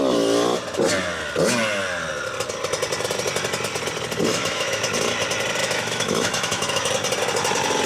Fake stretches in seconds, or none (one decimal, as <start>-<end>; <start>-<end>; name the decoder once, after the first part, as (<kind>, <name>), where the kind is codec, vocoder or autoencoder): 4.3-4.8 (autoencoder, DAC-VAE); 5.6-6.9